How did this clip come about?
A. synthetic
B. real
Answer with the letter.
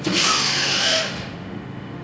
A